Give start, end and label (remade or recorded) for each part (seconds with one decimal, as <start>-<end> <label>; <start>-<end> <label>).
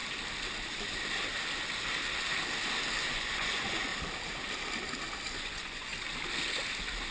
0.0-3.1 recorded; 3.1-3.9 remade; 3.9-5.3 recorded; 5.3-5.9 remade; 5.9-7.1 recorded